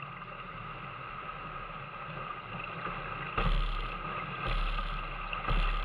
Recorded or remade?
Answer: recorded